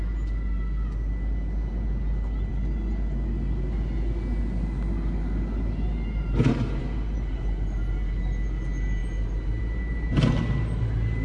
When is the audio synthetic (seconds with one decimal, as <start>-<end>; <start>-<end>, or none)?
none